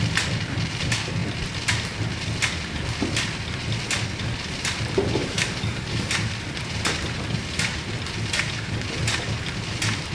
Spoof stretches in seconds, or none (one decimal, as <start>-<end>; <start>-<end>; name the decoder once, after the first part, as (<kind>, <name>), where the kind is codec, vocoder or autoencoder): 5.2-6.1 (codec, DAC)